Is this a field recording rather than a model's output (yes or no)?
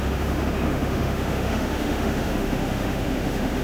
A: no